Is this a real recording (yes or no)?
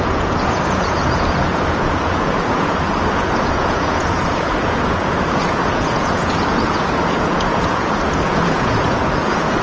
no